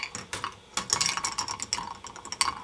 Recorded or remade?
recorded